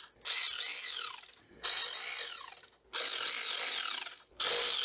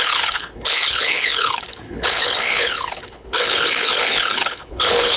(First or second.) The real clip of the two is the first